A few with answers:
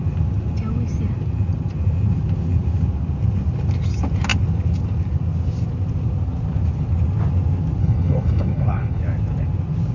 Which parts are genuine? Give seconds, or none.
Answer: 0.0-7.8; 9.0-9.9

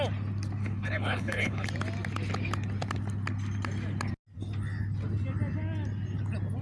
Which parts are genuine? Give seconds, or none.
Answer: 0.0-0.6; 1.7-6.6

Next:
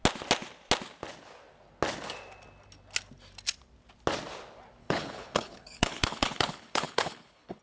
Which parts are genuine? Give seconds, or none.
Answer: 0.0-4.8

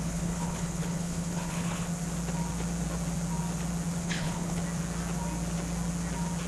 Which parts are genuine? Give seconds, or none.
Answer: 1.9-4.0; 4.6-6.5